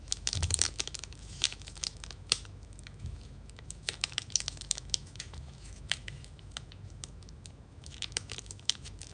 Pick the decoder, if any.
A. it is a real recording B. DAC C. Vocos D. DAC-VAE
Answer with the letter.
D